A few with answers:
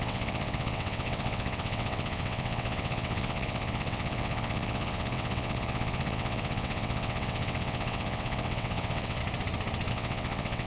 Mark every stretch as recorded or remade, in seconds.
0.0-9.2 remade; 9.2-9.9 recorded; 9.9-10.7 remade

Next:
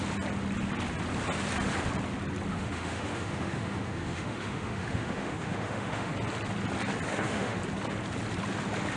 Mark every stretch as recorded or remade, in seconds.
0.0-2.5 recorded; 2.5-6.1 remade; 6.1-7.1 recorded; 7.1-7.6 remade; 7.6-9.0 recorded

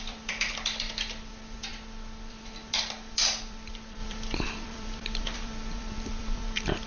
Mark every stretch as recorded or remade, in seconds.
0.0-1.7 remade; 1.7-2.3 recorded; 2.3-6.9 remade

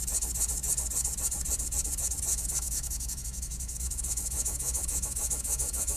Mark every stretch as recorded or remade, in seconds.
0.0-2.3 recorded; 2.3-6.0 remade

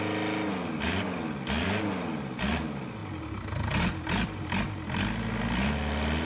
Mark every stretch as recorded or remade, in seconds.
0.0-6.2 recorded

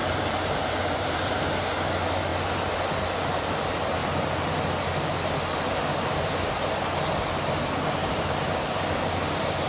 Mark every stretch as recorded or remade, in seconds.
0.0-1.4 remade; 1.4-8.0 recorded; 8.0-8.8 remade; 8.8-9.7 recorded

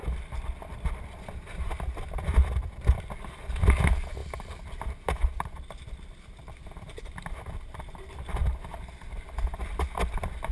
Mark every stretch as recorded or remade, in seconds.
0.0-1.1 recorded; 1.1-8.4 remade; 8.4-10.1 recorded; 10.1-10.5 remade

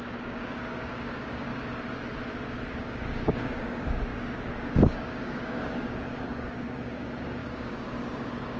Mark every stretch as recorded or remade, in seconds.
0.0-1.5 remade; 1.5-2.8 recorded; 2.8-8.6 remade